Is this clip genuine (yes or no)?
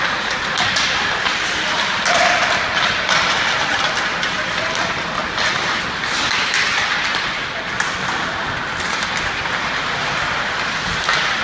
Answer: yes